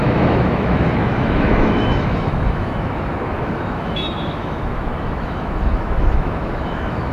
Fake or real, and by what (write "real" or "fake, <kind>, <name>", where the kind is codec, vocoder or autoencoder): fake, autoencoder, DAC-VAE